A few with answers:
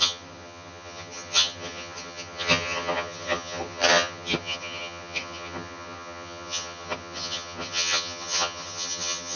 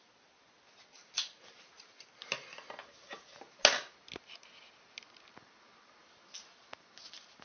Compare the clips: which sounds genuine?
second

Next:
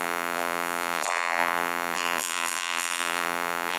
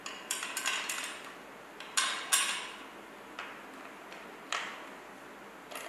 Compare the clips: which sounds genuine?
second